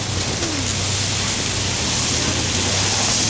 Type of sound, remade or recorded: recorded